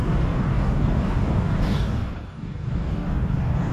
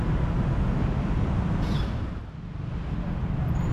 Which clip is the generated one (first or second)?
first